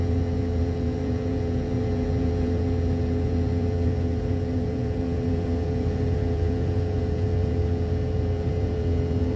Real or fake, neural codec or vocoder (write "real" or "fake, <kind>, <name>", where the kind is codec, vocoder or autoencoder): fake, vocoder, Vocos